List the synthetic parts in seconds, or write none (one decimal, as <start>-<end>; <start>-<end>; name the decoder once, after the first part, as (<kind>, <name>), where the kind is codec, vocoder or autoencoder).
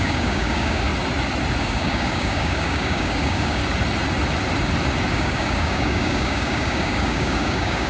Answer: 0.0-0.9 (codec, DAC); 1.6-3.6; 5.1-7.9